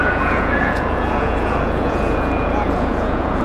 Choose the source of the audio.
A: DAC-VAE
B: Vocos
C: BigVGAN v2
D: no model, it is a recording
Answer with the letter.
B